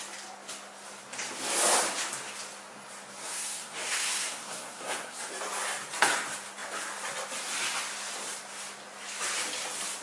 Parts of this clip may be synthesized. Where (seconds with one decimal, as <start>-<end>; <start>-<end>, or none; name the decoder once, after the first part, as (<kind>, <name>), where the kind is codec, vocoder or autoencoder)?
3.2-5.3 (codec, SNAC)